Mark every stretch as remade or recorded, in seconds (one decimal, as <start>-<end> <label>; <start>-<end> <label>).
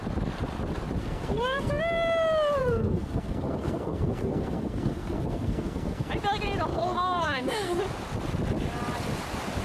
0.0-1.0 recorded; 1.0-1.8 remade; 1.8-2.6 recorded; 2.6-6.1 remade; 6.1-6.7 recorded; 6.7-7.8 remade; 7.8-9.6 recorded